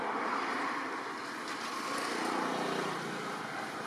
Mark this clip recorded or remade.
recorded